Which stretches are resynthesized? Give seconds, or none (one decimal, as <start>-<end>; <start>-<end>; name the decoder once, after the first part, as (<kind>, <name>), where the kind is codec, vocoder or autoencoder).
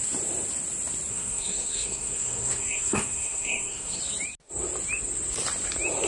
1.1-4.0 (codec, SNAC)